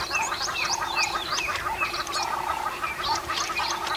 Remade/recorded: remade